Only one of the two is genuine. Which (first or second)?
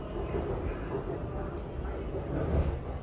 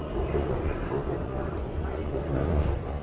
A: first